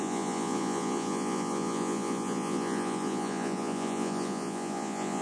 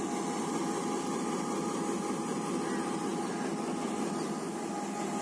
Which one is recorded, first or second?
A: second